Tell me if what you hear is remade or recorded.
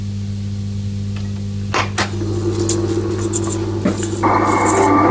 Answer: recorded